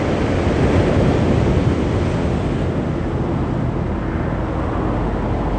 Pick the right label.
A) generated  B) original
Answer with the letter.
B